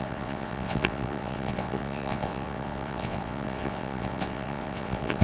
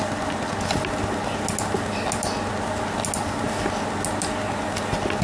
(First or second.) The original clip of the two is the second